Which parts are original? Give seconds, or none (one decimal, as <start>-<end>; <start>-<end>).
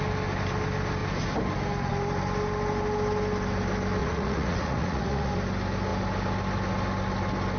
0.0-4.0; 5.3-7.6